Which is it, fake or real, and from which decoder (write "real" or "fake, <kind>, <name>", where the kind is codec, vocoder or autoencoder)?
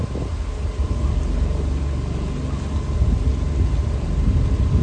real